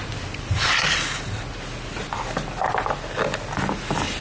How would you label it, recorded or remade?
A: recorded